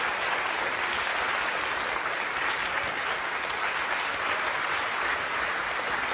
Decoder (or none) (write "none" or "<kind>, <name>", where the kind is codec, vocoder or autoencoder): none